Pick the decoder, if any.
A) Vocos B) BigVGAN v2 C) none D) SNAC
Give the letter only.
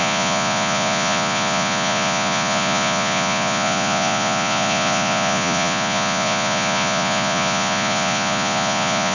A